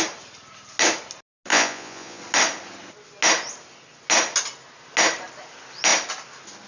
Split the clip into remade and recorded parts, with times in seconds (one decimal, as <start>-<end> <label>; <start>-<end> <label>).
0.0-1.5 recorded; 1.5-2.2 remade; 2.2-6.7 recorded